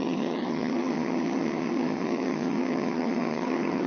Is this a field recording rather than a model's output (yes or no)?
no